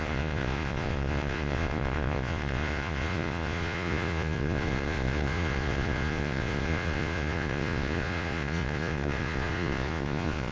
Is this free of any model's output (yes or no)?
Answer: no